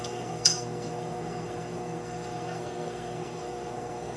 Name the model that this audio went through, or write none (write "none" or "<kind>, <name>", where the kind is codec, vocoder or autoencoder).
codec, SNAC